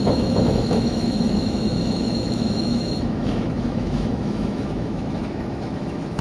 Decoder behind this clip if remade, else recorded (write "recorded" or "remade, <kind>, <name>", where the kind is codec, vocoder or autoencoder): remade, autoencoder, DAC-VAE